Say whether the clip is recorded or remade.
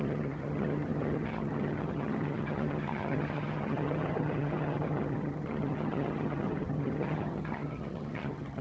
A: remade